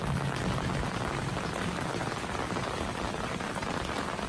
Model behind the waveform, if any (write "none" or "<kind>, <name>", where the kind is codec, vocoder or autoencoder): none